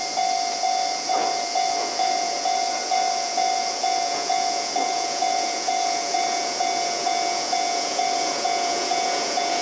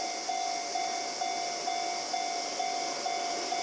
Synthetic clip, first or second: first